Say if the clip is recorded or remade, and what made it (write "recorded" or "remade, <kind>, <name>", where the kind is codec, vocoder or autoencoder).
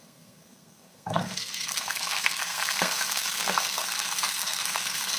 remade, codec, SNAC